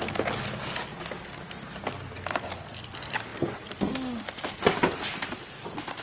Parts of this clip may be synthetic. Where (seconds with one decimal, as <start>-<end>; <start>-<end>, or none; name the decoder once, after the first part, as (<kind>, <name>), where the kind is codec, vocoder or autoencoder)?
none